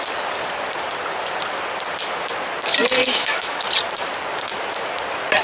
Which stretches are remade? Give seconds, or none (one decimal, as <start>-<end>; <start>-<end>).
3.0-3.6